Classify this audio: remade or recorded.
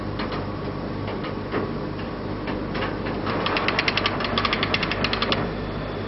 recorded